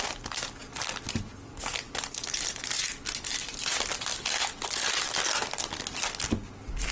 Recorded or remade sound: recorded